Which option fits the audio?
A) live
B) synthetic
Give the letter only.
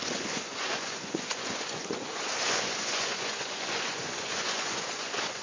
B